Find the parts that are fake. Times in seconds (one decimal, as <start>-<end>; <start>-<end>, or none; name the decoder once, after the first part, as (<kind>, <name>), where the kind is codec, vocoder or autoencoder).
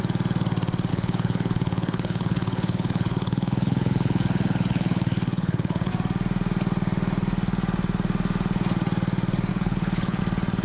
0.9-5.9 (codec, HILCodec); 9.5-10.2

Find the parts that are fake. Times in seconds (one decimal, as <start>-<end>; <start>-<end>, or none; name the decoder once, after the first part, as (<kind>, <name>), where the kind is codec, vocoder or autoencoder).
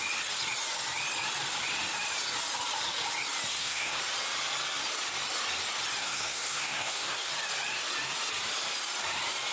3.5-4.0 (codec, SNAC); 6.0-7.3